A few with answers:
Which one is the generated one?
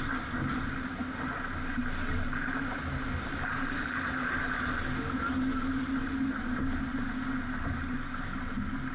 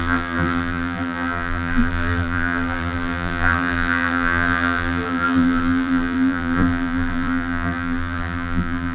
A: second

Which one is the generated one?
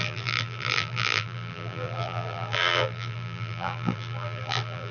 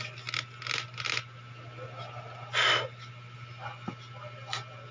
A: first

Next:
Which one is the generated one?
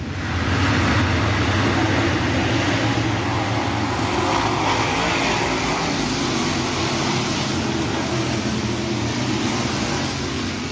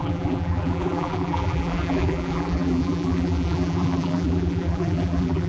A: second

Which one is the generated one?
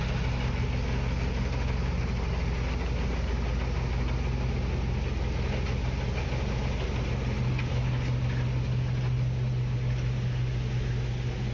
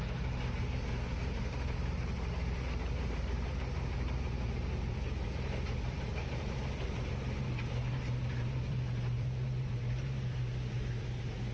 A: second